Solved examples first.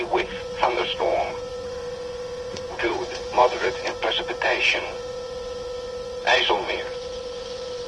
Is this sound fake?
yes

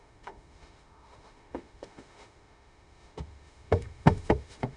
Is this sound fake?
yes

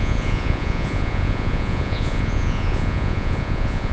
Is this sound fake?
yes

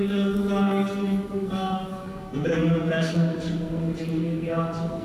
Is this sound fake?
yes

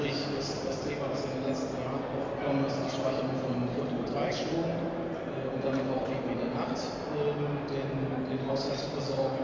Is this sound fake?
no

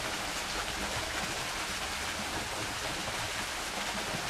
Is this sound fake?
no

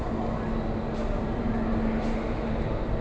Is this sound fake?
no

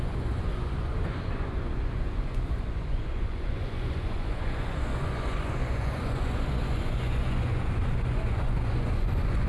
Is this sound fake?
yes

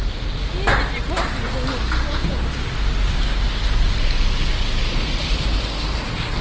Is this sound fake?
no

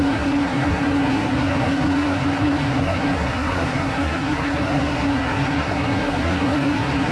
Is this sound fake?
yes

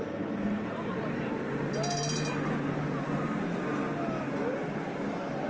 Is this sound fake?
no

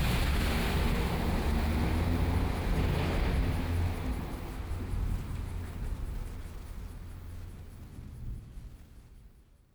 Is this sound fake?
no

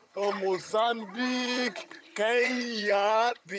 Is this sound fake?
yes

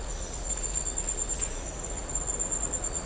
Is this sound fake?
yes